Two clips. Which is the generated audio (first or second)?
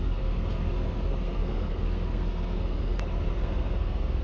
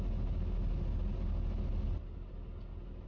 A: first